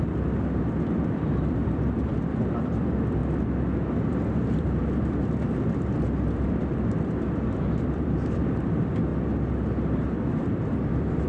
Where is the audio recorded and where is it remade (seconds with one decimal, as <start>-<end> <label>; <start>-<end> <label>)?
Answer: 0.0-3.2 remade; 3.2-4.6 recorded; 4.6-9.1 remade; 9.1-10.9 recorded; 10.9-11.3 remade